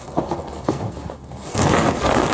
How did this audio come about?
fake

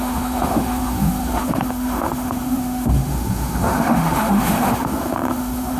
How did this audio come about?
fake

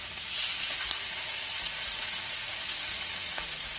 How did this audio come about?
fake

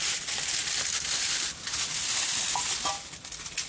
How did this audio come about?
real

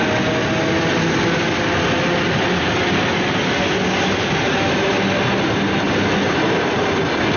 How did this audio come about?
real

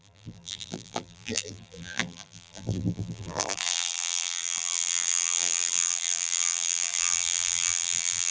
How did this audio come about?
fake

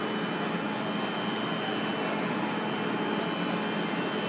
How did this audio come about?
real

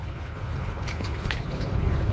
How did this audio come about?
fake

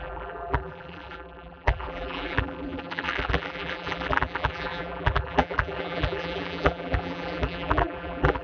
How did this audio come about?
fake